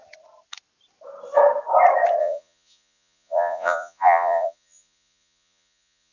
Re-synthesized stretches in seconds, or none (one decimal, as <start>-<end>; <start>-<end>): 2.2-6.1